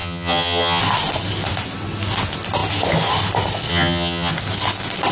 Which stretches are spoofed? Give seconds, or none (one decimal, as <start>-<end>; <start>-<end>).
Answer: 0.0-0.8; 3.7-4.3